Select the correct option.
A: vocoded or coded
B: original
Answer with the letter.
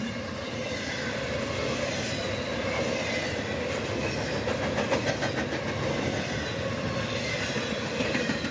B